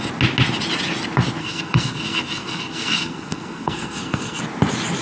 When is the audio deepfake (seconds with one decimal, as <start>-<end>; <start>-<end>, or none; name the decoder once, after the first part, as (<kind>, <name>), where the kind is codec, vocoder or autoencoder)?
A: 1.4-4.4 (codec, SNAC)